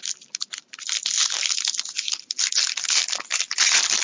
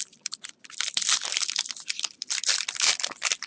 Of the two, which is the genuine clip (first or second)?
first